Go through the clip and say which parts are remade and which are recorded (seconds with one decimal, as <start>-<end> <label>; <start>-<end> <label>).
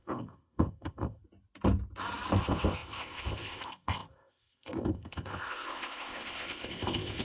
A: 0.0-1.2 remade; 1.2-2.4 recorded; 2.4-7.2 remade